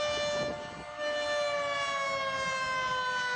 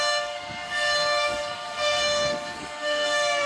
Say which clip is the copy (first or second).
second